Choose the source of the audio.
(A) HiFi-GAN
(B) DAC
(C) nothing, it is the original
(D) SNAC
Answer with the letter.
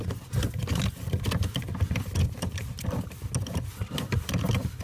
C